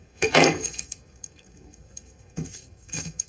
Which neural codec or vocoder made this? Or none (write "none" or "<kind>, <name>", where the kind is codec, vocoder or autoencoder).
codec, SNAC